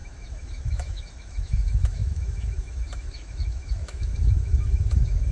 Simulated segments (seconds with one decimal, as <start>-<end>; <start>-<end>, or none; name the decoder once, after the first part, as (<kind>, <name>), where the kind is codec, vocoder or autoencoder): 0.0-5.3 (autoencoder, DAC-VAE)